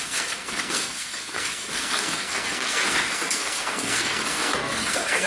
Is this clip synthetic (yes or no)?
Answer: yes